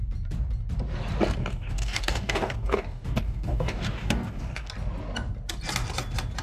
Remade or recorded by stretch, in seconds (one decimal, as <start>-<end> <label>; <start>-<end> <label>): 0.0-1.4 recorded; 1.4-4.7 remade; 4.7-6.4 recorded